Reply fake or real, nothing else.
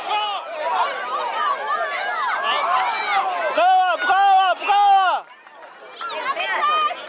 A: real